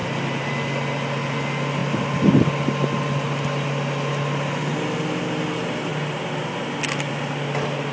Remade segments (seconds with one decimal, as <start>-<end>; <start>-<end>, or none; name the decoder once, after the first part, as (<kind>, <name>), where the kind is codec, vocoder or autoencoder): none